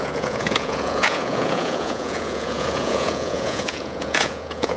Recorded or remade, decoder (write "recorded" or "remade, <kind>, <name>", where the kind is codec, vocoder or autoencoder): remade, vocoder, Vocos